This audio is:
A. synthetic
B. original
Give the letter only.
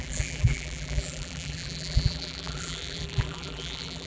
A